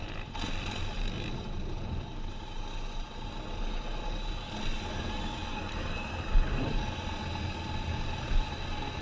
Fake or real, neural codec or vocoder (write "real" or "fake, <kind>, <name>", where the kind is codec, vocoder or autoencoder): real